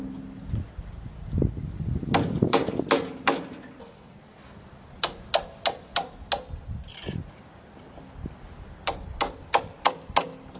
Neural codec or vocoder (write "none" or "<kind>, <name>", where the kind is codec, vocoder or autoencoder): none